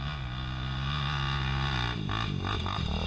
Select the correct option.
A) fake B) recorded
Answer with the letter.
B